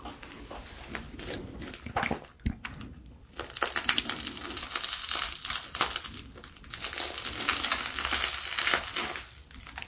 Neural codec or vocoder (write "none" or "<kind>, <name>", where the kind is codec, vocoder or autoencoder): none